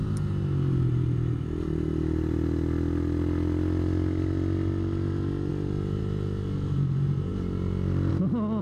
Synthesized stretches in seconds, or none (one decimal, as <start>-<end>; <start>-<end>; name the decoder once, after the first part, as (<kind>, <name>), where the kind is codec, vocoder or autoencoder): 7.3-8.1 (vocoder, BigVGAN v2)